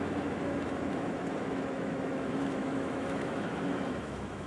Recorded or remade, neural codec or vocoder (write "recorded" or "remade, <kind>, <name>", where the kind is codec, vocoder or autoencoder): remade, autoencoder, DAC-VAE